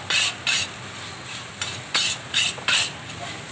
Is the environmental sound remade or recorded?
recorded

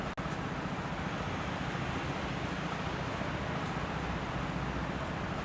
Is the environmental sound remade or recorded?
recorded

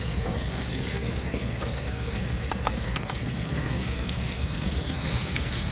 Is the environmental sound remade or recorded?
remade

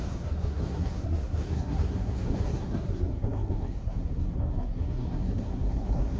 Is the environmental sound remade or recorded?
remade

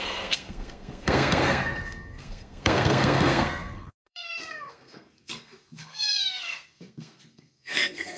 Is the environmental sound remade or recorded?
remade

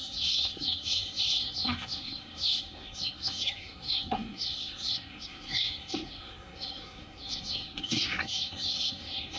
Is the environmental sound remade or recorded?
remade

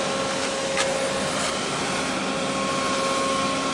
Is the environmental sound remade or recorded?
recorded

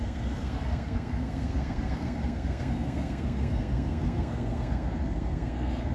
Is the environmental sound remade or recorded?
remade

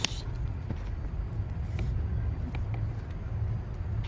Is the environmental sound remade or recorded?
recorded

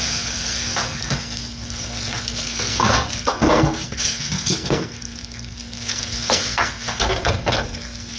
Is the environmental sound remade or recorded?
remade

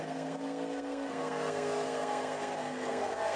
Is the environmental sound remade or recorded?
remade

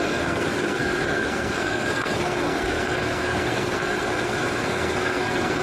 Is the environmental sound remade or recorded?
remade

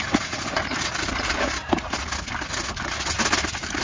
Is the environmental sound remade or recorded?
recorded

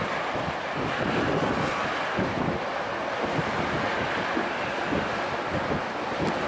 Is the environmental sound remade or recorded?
recorded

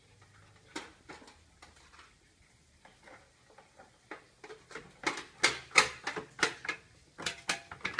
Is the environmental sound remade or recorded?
recorded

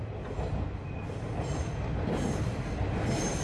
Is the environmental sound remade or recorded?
recorded